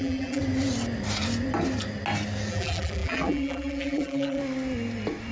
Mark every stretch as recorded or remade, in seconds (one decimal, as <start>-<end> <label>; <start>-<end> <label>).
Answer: 0.0-0.4 remade; 0.4-2.5 recorded; 2.5-4.4 remade; 4.4-5.3 recorded